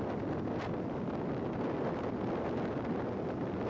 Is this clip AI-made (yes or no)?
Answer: no